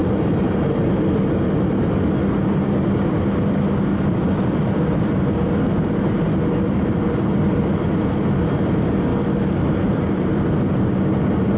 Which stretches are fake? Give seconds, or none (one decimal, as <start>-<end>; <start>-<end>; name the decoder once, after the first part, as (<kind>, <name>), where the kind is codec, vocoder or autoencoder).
3.9-5.7 (vocoder, BigVGAN v2)